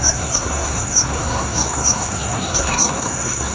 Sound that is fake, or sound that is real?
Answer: fake